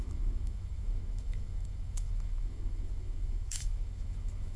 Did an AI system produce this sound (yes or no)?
yes